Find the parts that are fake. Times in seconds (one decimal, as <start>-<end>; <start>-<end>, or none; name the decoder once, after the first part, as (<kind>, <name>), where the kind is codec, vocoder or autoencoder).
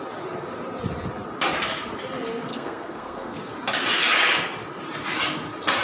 2.5-3.5 (codec, SNAC)